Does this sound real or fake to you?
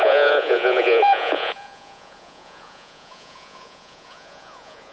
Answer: fake